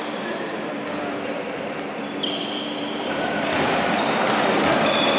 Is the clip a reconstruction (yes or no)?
yes